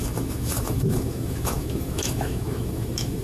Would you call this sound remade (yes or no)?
yes